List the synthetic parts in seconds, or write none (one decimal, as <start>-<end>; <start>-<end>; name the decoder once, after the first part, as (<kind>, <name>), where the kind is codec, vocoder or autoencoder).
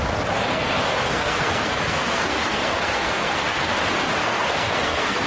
0.5-3.7 (codec, SNAC); 4.2-5.3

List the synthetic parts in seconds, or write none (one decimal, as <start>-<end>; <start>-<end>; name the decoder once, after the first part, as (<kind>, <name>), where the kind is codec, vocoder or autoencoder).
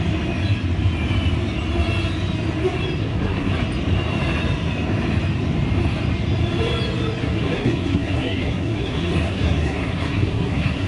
3.0-3.5 (codec, SNAC); 7.2-10.9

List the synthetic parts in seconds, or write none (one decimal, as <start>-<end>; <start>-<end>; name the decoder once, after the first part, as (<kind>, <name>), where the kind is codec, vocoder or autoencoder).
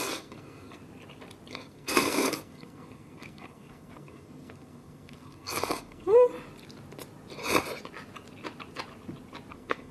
0.0-0.8 (codec, SNAC); 1.5-6.3; 9.5-9.9